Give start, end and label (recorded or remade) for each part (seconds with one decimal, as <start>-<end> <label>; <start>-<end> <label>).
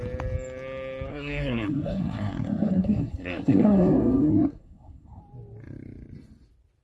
0.0-1.1 recorded; 1.1-5.2 remade; 5.2-6.8 recorded